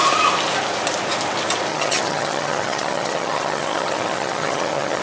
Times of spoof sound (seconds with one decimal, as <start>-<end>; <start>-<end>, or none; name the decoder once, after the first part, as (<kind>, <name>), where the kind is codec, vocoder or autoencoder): 1.7-5.0 (vocoder, HiFi-GAN)